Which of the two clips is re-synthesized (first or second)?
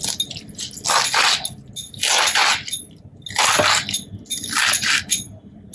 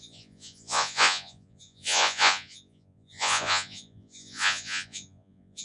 second